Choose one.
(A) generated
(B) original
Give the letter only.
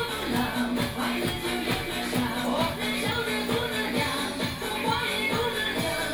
B